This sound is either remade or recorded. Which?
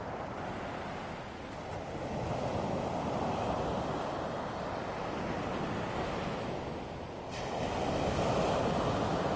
recorded